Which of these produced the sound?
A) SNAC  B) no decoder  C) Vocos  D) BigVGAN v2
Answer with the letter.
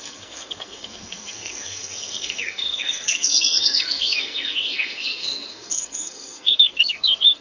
A